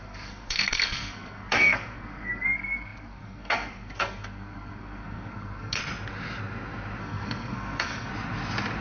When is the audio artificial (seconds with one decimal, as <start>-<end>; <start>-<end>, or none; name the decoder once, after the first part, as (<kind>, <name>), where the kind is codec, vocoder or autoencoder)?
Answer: 0.0-5.8 (codec, SNAC); 7.0-8.1